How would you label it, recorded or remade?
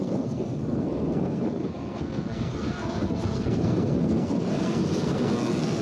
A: remade